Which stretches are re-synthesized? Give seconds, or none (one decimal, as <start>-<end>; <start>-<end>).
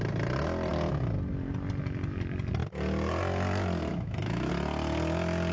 3.9-4.5